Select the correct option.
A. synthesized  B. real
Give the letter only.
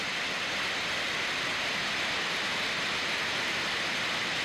B